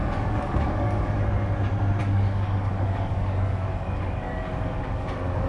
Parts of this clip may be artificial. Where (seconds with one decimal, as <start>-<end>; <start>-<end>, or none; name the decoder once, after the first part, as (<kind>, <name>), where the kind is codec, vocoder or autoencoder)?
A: 0.0-1.2 (codec, DAC); 2.0-5.5